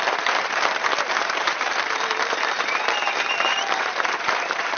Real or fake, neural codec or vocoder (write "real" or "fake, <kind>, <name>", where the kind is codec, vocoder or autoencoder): fake, vocoder, BigVGAN v2